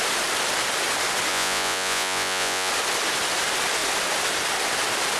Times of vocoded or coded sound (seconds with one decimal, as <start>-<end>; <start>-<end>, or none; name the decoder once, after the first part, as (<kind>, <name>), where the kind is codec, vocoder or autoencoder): 1.3-2.7 (vocoder, Vocos)